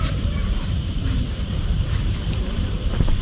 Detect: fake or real fake